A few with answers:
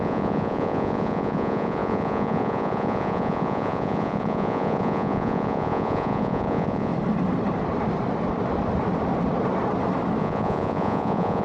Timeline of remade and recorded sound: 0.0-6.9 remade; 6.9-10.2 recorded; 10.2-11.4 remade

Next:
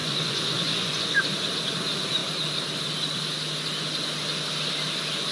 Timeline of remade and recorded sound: 0.0-1.2 remade; 1.2-5.3 recorded

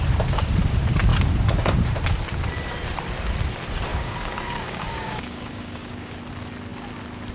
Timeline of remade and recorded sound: 0.0-3.9 recorded; 3.9-6.2 remade; 6.2-7.3 recorded

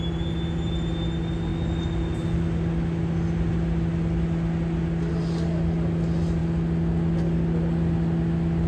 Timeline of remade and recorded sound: 0.0-8.7 recorded

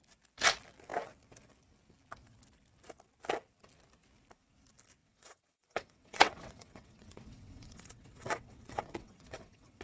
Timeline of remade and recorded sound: 0.0-5.0 recorded; 5.0-9.8 remade

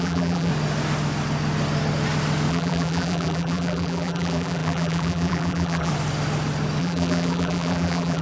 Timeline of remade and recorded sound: 0.0-0.5 remade; 0.5-2.5 recorded; 2.5-5.9 remade; 5.9-6.8 recorded; 6.8-8.2 remade